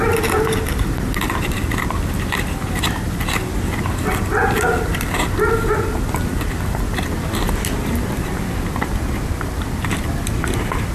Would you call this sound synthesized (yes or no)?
no